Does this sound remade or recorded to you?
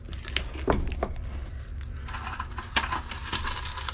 recorded